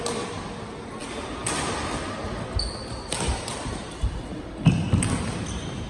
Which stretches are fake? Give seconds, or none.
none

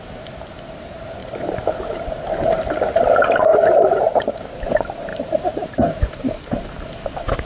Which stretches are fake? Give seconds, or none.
1.2-2.9 (vocoder, BigVGAN v2); 3.5-4.4; 5.1-6.9

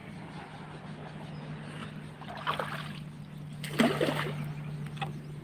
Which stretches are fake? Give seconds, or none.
1.8-3.2 (vocoder, BigVGAN v2)